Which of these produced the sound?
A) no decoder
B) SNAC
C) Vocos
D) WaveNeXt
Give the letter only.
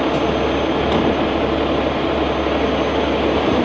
A